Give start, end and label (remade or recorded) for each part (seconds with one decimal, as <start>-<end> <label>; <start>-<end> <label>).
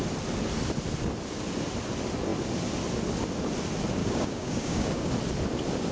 0.0-4.0 recorded; 4.0-5.1 remade; 5.1-5.9 recorded